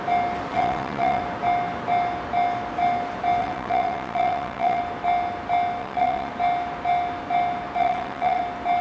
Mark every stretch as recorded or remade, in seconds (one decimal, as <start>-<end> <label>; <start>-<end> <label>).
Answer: 0.0-0.5 recorded; 0.5-1.2 remade; 1.2-3.4 recorded; 3.4-4.8 remade; 4.8-5.8 recorded; 5.8-6.3 remade; 6.3-7.8 recorded; 7.8-8.4 remade; 8.4-8.8 recorded